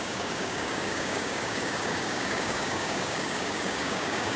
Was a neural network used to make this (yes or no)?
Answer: yes